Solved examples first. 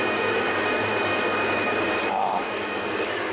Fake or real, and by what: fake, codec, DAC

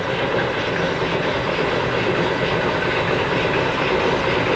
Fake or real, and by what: real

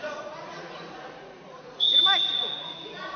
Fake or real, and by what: fake, vocoder, Vocos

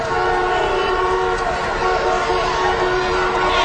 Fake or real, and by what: real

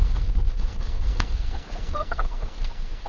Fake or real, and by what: fake, codec, SNAC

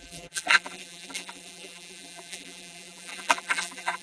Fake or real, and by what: fake, vocoder, BigVGAN v2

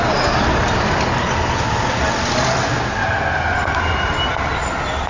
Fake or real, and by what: real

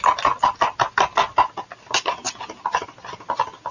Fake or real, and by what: real